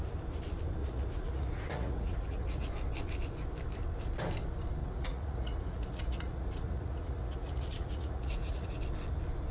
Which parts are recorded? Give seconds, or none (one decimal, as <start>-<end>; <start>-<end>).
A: 0.0-0.8; 2.7-4.8; 8.8-9.5